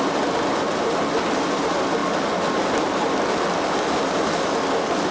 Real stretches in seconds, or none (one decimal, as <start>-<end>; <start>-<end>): 0.0-5.1